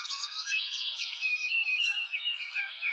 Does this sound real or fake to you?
fake